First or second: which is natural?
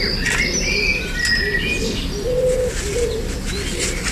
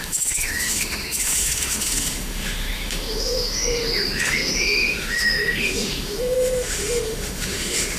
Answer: first